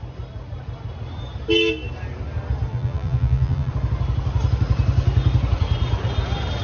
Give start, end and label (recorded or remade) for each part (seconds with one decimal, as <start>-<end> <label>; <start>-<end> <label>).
0.0-2.7 recorded; 2.7-3.7 remade; 3.7-6.6 recorded